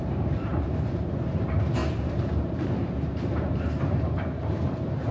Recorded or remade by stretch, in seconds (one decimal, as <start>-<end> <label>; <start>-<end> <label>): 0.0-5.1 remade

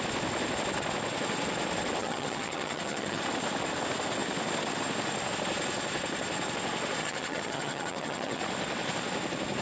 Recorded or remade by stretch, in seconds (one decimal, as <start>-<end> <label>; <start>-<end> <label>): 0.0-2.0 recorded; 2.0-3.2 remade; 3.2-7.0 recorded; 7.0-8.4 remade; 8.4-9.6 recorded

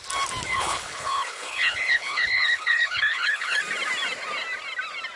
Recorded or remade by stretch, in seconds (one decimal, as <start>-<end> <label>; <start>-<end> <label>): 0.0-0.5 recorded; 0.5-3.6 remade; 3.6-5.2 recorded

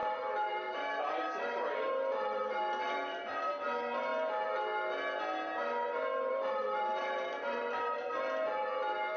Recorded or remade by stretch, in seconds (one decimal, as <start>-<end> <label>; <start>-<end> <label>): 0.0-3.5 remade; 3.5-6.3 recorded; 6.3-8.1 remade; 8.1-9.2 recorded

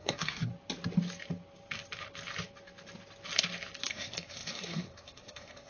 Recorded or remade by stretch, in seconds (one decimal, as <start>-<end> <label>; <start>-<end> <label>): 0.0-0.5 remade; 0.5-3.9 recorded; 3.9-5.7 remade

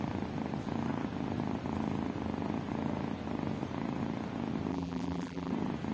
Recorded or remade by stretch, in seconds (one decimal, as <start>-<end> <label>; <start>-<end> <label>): 0.0-4.7 recorded; 4.7-5.5 remade; 5.5-5.9 recorded

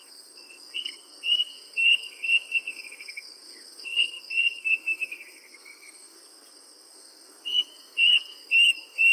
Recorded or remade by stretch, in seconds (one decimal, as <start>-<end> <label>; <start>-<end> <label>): 0.0-9.1 remade

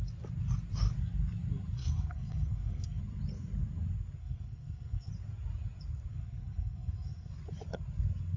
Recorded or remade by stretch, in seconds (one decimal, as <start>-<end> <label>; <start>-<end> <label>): 0.0-1.8 recorded; 1.8-3.0 remade; 3.0-4.2 recorded; 4.2-5.1 remade; 5.1-6.1 recorded; 6.1-7.3 remade; 7.3-8.4 recorded